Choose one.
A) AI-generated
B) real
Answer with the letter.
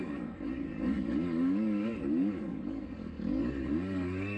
A